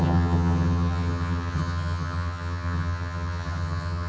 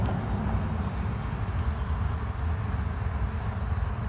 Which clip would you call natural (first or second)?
second